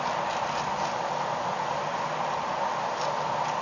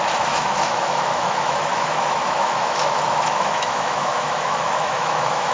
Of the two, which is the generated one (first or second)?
second